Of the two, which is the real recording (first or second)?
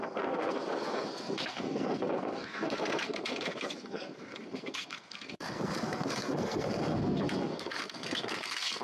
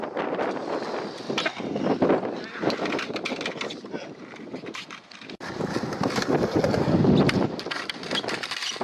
second